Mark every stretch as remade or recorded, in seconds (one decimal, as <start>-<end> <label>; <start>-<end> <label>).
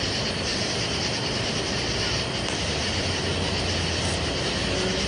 0.0-0.5 recorded; 0.5-3.3 remade; 3.3-5.1 recorded